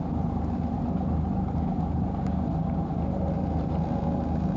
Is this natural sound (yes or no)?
yes